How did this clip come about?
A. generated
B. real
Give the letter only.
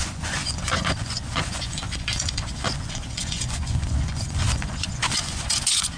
A